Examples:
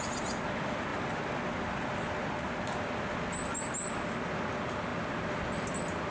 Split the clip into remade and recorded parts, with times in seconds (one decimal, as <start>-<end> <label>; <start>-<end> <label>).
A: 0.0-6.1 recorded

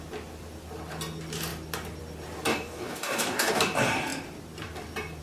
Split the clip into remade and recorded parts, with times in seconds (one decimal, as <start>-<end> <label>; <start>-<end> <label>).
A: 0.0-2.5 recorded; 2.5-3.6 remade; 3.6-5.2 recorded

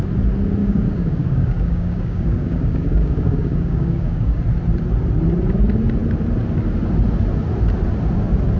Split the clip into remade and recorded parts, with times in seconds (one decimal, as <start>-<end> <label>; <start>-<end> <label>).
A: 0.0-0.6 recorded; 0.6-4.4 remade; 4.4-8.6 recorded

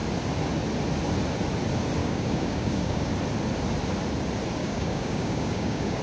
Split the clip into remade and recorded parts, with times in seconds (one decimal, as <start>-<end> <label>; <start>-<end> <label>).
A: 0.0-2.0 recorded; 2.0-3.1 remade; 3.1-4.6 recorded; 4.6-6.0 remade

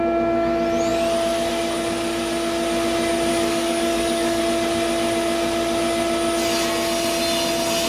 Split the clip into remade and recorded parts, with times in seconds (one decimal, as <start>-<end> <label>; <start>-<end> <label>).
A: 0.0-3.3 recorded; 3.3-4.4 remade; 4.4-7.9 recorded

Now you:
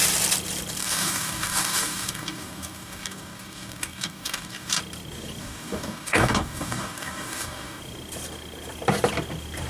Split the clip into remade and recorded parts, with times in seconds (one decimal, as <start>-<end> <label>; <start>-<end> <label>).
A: 0.0-0.8 recorded; 0.8-4.8 remade; 4.8-5.4 recorded; 5.4-7.8 remade; 7.8-9.7 recorded